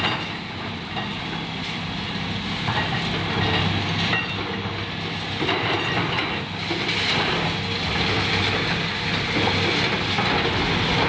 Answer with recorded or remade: recorded